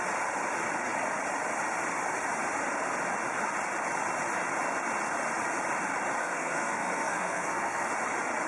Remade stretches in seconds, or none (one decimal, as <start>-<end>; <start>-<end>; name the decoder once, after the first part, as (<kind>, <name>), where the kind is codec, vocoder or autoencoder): 6.2-7.9 (codec, SNAC)